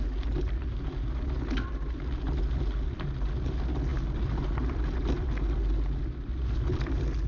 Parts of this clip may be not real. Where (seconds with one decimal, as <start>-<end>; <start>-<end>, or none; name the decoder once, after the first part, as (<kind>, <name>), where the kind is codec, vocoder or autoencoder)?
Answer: none